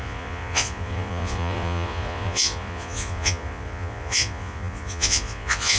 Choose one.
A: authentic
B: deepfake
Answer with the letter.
B